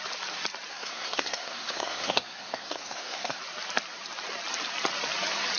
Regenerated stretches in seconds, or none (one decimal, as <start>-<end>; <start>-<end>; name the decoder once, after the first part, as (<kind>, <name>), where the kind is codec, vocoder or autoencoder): 0.7-3.4 (codec, SNAC)

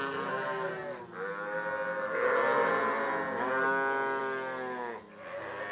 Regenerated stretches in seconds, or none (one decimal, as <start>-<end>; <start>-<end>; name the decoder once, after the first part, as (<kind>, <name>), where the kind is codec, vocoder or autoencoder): none

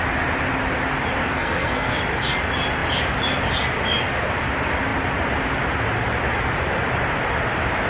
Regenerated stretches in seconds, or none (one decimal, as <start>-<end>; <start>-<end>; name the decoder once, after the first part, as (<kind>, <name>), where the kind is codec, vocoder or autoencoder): 1.2-2.0 (codec, SNAC)

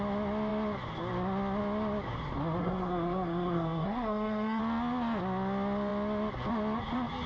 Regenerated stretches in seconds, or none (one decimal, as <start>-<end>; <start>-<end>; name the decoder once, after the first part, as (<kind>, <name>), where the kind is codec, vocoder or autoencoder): 2.6-4.6 (codec, SNAC)